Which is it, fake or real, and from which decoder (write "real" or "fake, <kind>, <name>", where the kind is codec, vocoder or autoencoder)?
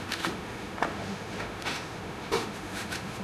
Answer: fake, autoencoder, DAC-VAE